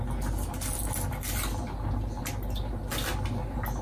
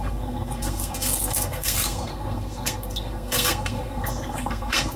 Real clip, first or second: first